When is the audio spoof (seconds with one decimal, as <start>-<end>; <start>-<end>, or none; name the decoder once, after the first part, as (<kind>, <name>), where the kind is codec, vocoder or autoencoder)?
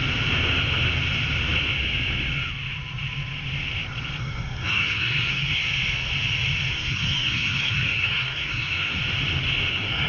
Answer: 4.2-5.6 (codec, SNAC); 6.7-9.0; 9.7-10.1